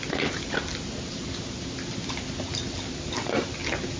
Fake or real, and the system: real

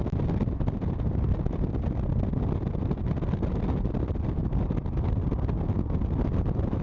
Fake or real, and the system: real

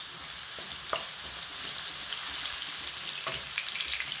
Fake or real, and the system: real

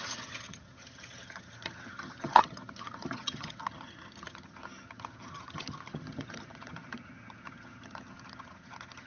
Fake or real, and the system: fake, vocoder, HiFi-GAN